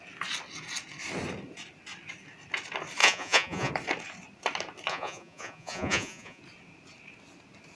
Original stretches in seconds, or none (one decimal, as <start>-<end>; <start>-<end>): 0.0-3.0; 3.7-4.9; 6.4-7.8